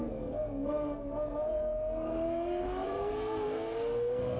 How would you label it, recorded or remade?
remade